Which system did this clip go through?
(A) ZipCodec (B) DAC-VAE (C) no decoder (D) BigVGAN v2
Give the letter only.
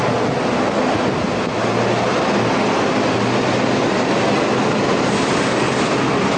C